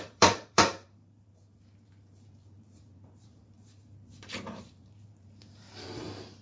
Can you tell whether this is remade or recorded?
remade